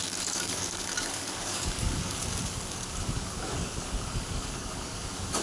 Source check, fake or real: fake